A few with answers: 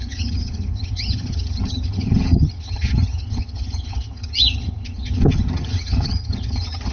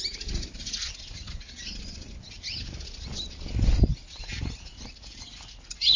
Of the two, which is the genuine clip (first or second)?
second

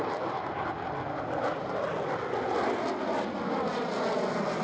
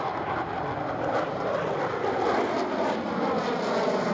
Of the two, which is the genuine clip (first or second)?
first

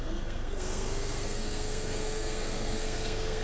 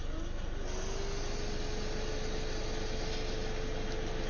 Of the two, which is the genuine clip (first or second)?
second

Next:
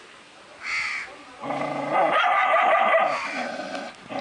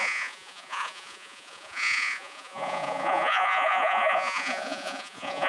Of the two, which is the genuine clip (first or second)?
first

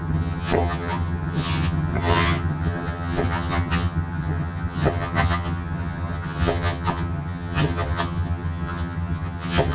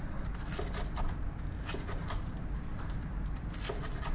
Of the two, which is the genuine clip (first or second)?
second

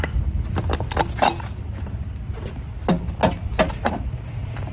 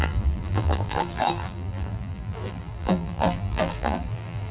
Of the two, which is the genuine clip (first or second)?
first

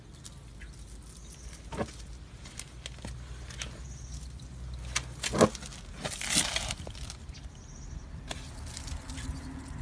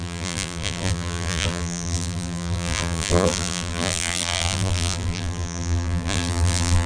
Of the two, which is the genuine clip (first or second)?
first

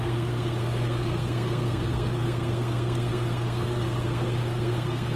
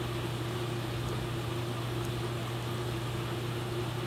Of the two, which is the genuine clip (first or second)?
second